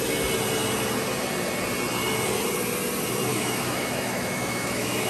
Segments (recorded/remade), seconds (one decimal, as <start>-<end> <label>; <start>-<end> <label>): 0.0-3.3 recorded; 3.3-5.1 remade